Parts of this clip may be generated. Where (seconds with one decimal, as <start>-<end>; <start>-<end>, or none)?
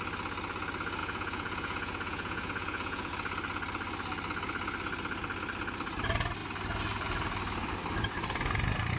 1.0-3.1